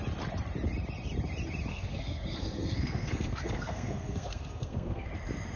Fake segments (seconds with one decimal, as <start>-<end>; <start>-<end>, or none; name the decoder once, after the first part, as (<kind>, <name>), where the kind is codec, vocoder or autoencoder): 1.7-5.1 (codec, SNAC)

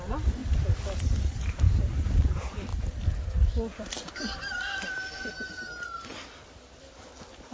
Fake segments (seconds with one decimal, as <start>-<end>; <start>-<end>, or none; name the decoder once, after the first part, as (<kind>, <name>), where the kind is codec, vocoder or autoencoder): 2.7-5.3 (vocoder, BigVGAN v2); 6.1-6.6

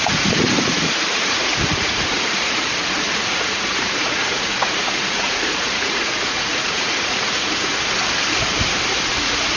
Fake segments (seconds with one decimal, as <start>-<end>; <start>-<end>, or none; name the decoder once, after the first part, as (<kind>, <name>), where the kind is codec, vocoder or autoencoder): 0.0-7.7 (vocoder, Vocos); 9.2-9.6

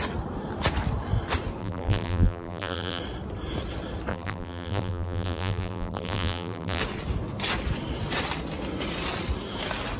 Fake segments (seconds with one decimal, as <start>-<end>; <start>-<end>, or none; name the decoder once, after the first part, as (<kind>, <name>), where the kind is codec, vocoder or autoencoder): 1.6-3.0 (vocoder, BigVGAN v2); 4.1-6.8

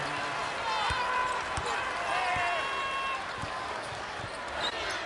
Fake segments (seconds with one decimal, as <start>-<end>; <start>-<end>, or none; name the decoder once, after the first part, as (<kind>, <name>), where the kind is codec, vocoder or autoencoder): 3.4-4.2 (codec, DAC)

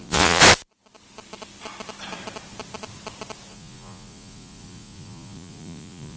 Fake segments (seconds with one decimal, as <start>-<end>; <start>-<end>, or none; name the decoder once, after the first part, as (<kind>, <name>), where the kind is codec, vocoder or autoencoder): 0.0-0.4 (vocoder, Vocos); 3.5-6.2